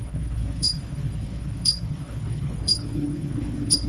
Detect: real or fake fake